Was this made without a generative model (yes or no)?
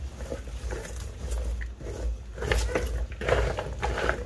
yes